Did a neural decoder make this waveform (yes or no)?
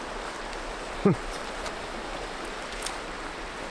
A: no